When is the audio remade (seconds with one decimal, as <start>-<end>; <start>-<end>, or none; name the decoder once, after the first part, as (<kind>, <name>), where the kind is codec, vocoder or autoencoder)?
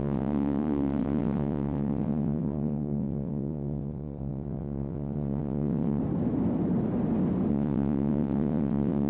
0.0-6.0 (vocoder, WaveNeXt); 7.5-9.1